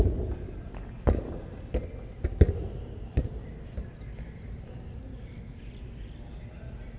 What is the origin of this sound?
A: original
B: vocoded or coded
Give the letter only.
A